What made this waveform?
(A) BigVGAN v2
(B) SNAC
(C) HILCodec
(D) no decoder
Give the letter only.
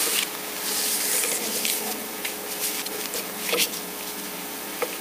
A